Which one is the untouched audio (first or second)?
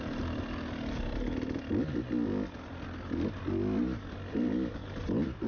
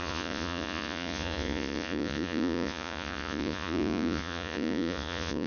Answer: first